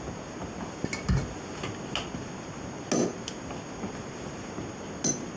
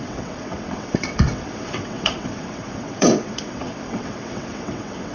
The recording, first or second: first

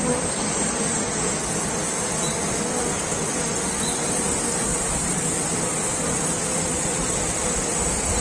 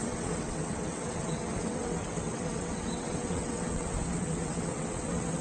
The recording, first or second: first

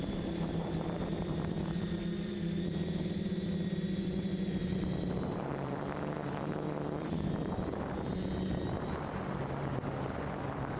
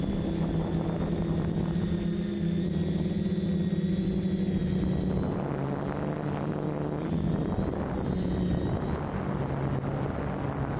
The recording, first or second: second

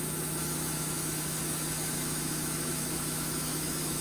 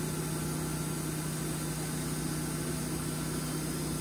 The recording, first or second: second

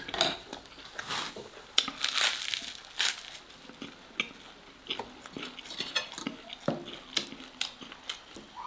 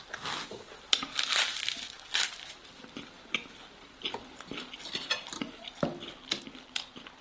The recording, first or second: first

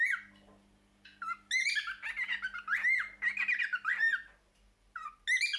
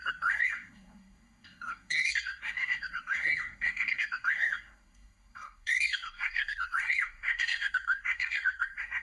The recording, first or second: first